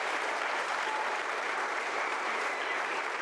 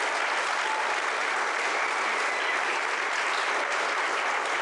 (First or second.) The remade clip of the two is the first